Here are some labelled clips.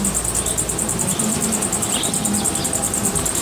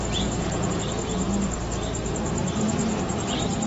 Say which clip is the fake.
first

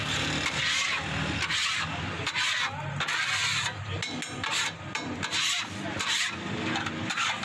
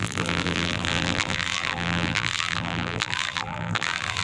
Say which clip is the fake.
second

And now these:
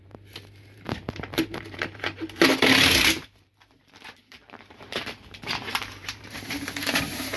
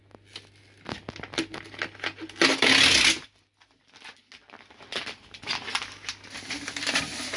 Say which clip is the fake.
first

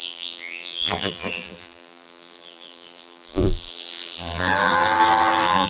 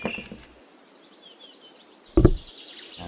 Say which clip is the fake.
first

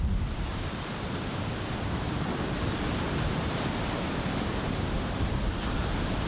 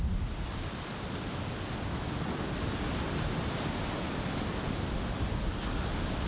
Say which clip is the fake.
first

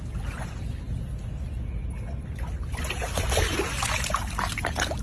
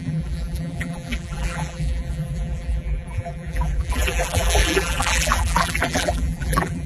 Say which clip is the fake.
second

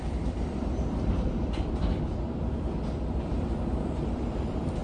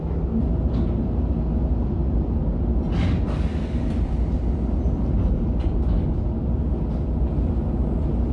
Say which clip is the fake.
first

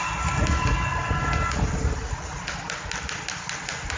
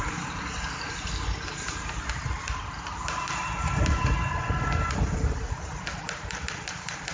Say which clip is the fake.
second